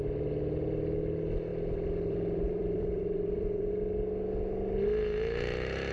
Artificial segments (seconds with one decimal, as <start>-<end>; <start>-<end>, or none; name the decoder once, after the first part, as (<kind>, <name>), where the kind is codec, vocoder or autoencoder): 1.5-3.7 (vocoder, BigVGAN v2)